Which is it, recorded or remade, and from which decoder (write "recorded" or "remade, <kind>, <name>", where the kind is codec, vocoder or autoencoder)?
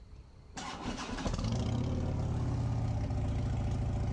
recorded